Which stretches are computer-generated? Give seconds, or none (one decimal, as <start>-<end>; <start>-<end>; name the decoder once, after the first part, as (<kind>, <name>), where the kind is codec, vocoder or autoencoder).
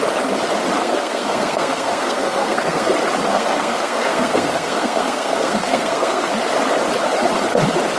0.8-2.9 (codec, SNAC); 3.3-6.3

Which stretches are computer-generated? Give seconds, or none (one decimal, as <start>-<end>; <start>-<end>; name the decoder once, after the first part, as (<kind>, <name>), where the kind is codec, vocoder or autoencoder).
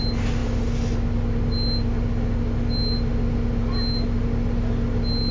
none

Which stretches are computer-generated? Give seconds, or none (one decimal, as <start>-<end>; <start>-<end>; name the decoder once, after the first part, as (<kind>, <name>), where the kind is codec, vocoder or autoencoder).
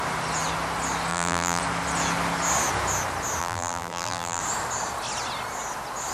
1.1-1.6 (vocoder, BigVGAN v2); 3.4-4.4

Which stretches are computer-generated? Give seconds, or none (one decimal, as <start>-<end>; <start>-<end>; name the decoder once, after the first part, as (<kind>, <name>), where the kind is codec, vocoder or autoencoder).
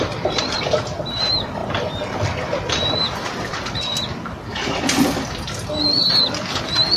none